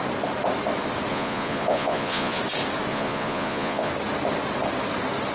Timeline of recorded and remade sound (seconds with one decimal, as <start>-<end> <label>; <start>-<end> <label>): 0.0-1.1 recorded; 1.1-2.4 remade; 2.4-2.9 recorded; 2.9-3.9 remade; 3.9-5.3 recorded